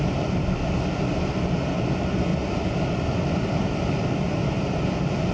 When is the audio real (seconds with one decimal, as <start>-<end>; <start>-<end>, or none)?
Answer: 0.0-2.3